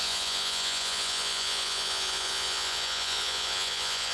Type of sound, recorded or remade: remade